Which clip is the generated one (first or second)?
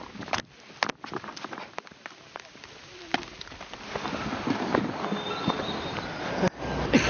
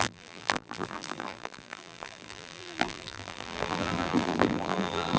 second